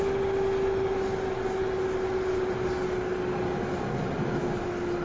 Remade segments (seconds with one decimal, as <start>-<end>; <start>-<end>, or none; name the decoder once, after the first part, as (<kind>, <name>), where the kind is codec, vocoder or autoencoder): none